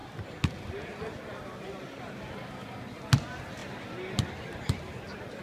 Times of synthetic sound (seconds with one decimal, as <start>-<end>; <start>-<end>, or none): none